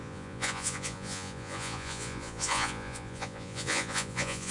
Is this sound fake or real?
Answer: fake